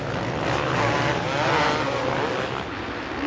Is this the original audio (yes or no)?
yes